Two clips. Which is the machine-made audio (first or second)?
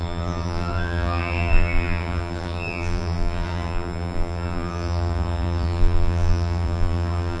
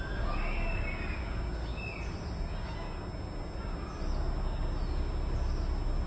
first